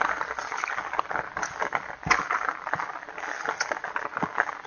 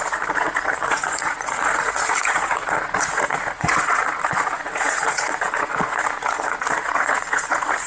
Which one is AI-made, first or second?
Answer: second